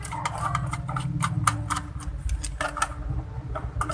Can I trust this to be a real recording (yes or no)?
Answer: yes